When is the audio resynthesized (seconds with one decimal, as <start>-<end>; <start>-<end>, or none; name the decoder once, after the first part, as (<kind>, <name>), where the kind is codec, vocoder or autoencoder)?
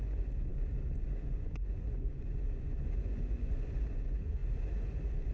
0.0-5.3 (vocoder, Vocos)